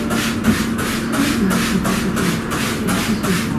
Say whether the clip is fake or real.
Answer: real